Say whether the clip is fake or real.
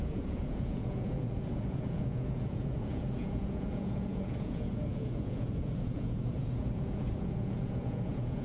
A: fake